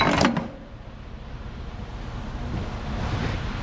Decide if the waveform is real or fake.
real